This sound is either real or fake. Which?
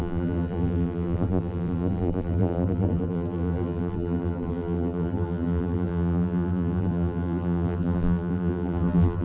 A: fake